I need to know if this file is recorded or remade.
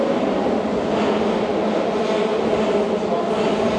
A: recorded